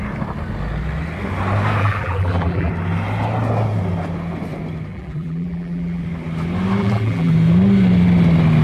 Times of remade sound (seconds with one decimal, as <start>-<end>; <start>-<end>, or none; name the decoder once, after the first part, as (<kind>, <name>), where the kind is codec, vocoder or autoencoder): 1.8-2.7 (vocoder, BigVGAN v2); 4.9-6.0; 6.8-7.3